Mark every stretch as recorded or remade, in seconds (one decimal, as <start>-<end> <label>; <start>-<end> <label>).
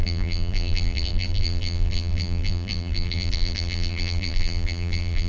0.0-5.3 remade